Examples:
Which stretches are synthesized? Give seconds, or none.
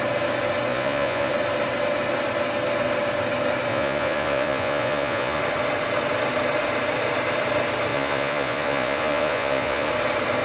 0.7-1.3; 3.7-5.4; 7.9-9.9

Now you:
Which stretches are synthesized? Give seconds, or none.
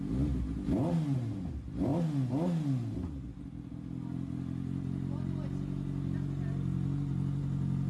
none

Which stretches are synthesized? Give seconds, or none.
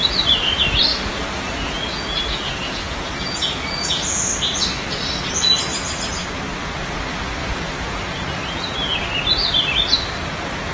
0.9-4.2; 7.4-8.7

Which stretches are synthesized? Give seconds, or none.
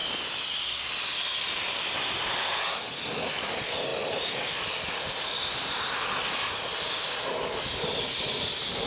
none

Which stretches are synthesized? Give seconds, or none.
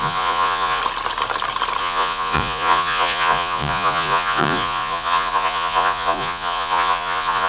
0.0-0.8; 1.8-7.5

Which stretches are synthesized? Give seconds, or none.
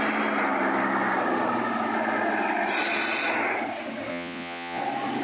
4.1-4.8